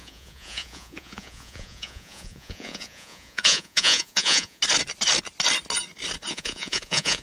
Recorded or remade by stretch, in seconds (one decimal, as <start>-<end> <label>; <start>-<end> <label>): 0.0-4.6 remade; 4.6-6.3 recorded; 6.3-7.2 remade